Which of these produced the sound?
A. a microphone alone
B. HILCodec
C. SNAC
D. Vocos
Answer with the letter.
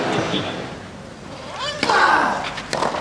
A